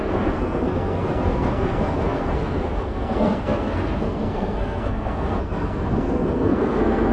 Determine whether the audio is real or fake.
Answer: fake